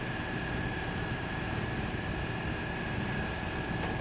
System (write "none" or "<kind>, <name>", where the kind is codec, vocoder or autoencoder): none